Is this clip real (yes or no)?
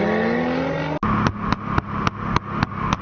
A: yes